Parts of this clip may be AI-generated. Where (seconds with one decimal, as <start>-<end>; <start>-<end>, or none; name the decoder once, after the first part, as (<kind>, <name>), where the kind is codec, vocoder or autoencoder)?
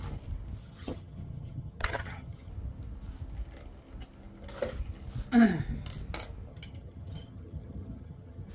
0.6-2.5 (vocoder, HiFi-GAN); 6.5-8.5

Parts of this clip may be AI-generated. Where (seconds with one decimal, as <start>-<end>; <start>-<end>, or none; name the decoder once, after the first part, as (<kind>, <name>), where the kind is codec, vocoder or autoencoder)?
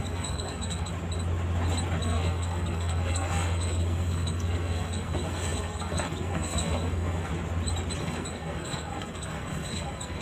0.0-0.9 (codec, SNAC); 2.0-7.3; 8.0-10.2